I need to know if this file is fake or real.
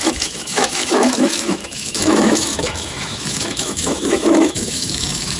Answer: fake